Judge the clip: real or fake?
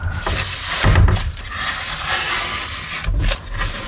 real